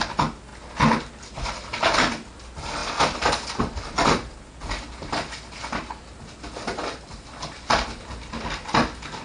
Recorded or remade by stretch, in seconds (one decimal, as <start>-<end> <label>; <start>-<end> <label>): 0.0-9.2 recorded